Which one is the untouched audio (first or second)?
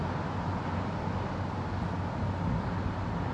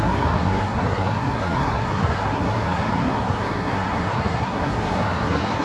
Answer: first